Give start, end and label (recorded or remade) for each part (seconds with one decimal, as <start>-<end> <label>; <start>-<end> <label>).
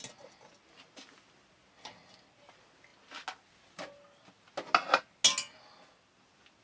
0.0-6.6 recorded